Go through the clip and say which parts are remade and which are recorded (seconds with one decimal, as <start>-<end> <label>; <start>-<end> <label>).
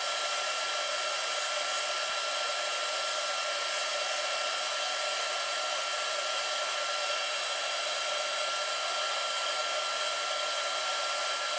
0.0-11.6 recorded